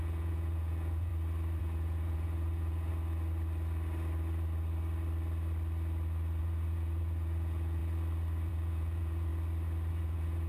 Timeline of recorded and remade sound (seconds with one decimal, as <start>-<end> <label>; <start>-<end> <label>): 0.0-1.1 remade; 1.1-1.6 recorded; 1.6-2.9 remade; 2.9-6.4 recorded; 6.4-7.8 remade; 7.8-8.5 recorded; 8.5-9.3 remade; 9.3-9.9 recorded; 9.9-10.5 remade